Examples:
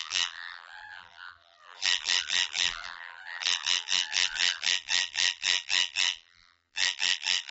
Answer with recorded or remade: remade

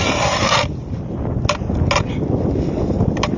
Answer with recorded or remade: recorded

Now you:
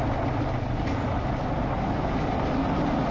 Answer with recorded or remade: recorded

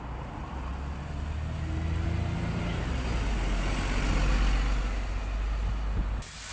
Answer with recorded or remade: recorded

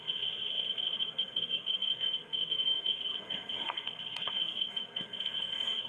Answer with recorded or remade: remade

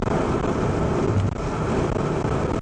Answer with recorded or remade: recorded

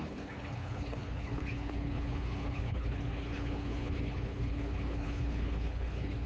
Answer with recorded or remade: remade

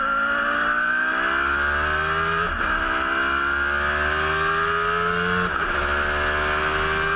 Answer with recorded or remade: recorded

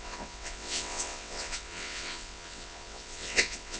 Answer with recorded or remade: remade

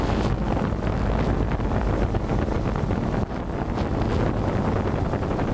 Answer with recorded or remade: recorded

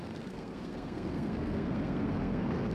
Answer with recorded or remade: remade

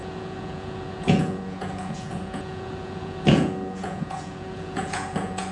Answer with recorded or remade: remade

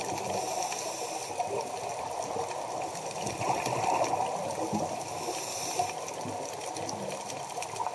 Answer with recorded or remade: recorded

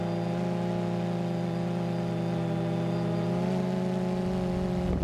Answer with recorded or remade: recorded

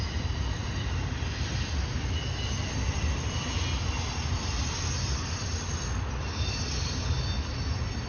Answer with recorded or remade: recorded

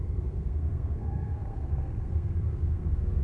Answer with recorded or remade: remade